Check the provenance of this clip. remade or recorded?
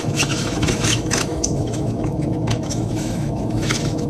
remade